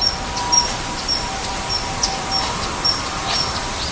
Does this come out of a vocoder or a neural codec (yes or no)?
yes